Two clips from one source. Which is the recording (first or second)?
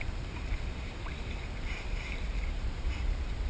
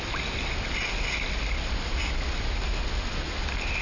second